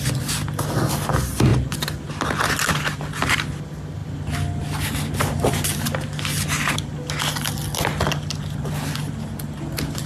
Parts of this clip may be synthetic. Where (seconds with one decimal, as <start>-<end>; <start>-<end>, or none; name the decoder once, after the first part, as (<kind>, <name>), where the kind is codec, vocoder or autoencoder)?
none